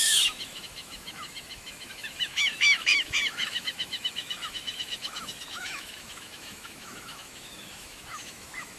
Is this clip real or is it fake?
fake